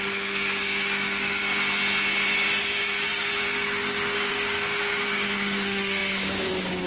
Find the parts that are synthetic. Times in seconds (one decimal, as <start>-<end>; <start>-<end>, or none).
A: 0.0-1.5; 2.6-6.9